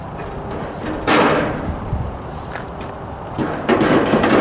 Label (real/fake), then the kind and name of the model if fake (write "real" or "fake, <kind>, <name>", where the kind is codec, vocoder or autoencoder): real